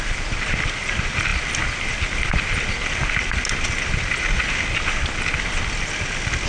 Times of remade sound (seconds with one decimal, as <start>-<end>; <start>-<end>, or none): none